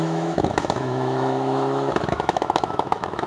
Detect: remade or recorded remade